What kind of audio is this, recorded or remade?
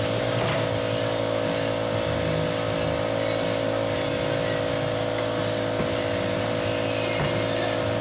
recorded